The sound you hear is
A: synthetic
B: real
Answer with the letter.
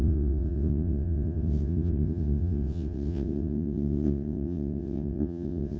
A